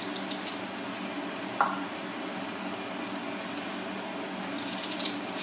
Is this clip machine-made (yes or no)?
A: no